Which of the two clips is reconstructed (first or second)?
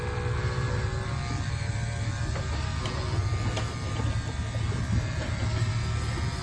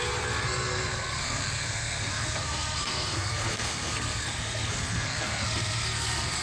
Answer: second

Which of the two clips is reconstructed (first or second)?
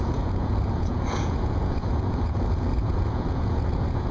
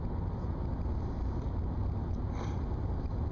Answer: first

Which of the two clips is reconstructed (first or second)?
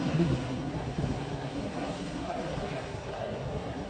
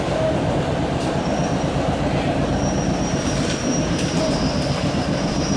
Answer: first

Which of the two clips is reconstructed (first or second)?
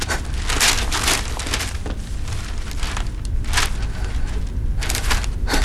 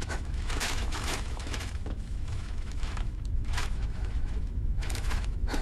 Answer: second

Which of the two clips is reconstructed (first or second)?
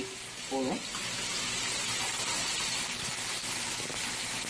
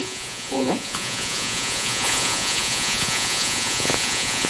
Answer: second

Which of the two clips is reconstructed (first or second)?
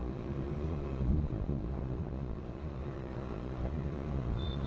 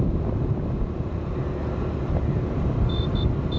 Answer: first